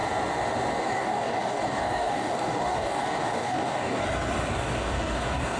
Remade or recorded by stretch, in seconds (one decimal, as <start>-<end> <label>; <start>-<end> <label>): 0.0-0.8 recorded; 0.8-4.0 remade; 4.0-4.5 recorded; 4.5-5.6 remade